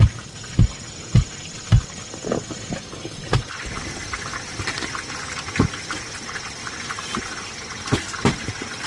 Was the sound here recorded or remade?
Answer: recorded